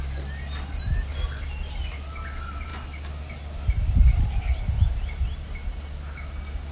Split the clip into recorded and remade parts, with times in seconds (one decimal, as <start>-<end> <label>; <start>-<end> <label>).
0.0-6.7 recorded